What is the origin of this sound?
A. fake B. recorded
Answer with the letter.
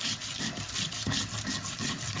B